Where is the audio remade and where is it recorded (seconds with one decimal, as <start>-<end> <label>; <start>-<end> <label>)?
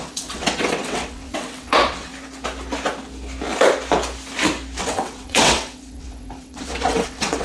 0.0-2.1 remade; 2.1-4.8 recorded; 4.8-7.4 remade